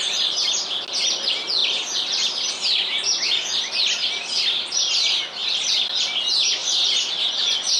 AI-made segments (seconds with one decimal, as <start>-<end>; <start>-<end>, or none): 5.4-6.0; 6.6-7.3